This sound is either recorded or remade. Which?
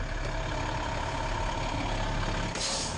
recorded